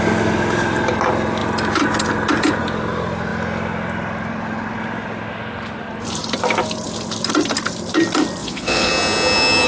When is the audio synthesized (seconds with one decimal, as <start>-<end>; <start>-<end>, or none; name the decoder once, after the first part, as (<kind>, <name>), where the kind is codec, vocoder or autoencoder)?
8.4-8.9 (vocoder, Vocos)